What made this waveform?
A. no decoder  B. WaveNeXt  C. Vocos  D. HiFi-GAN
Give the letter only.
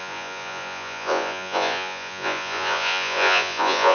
C